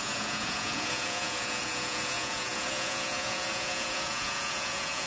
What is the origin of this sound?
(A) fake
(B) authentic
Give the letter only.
A